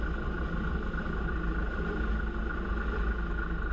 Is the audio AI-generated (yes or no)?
no